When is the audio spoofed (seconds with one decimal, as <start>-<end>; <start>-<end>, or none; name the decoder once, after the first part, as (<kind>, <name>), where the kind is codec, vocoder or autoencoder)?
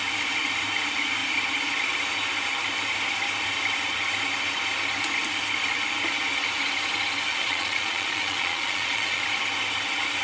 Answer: 7.3-9.2 (vocoder, Vocos)